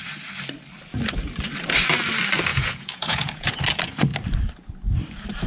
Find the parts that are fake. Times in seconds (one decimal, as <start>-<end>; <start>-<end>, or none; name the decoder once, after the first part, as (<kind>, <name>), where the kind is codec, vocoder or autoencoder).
2.5-3.5 (vocoder, Vocos)